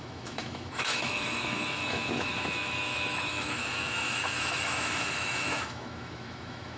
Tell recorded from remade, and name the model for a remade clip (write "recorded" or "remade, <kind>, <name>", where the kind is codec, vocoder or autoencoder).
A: remade, autoencoder, DAC-VAE